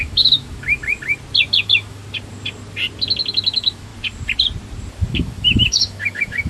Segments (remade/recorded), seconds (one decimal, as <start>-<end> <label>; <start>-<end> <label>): 0.0-0.8 remade; 0.8-1.6 recorded; 1.6-2.0 remade; 2.0-3.3 recorded; 3.3-3.9 remade; 3.9-5.1 recorded; 5.1-6.5 remade